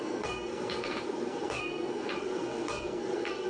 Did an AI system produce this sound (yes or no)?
yes